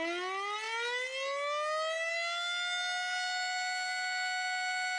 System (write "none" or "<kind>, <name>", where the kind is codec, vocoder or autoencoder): none